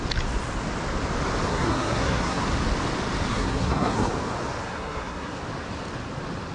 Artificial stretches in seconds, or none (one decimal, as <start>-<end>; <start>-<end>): 1.5-2.4; 3.3-4.1; 4.6-5.4